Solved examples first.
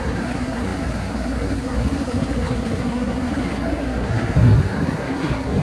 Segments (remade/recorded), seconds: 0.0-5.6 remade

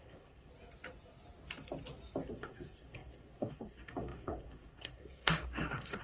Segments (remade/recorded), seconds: 0.0-0.5 remade; 0.5-2.3 recorded; 2.3-6.0 remade

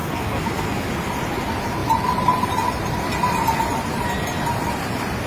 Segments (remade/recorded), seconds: 0.0-0.9 remade; 0.9-5.3 recorded

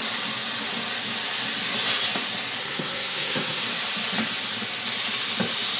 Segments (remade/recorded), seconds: 0.0-2.6 recorded; 2.6-3.6 remade; 3.6-5.8 recorded

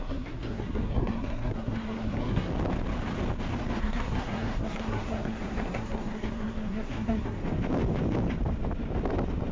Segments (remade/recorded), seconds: 0.0-2.5 remade; 2.5-3.8 recorded; 3.8-7.4 remade; 7.4-9.5 recorded